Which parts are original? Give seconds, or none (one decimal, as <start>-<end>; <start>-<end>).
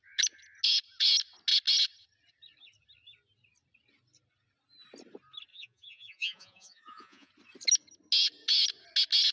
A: 0.0-5.5; 7.3-9.3